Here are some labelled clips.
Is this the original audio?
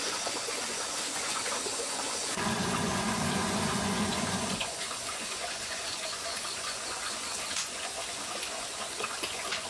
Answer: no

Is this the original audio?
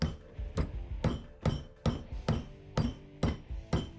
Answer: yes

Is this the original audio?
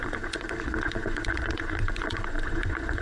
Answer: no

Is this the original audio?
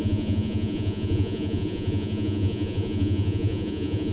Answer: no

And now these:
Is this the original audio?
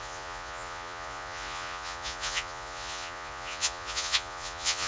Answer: no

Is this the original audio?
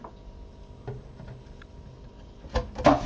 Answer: yes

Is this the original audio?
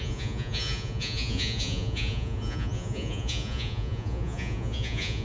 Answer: no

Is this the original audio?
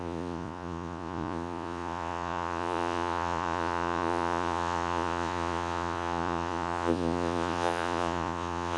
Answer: no